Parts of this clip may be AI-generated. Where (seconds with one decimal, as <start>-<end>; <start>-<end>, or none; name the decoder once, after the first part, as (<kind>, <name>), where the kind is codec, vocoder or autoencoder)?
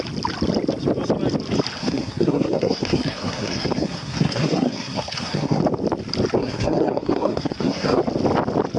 1.8-5.6 (codec, SNAC); 6.4-8.0